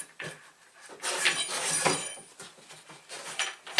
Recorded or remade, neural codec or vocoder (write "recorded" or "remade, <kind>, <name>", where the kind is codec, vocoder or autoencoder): recorded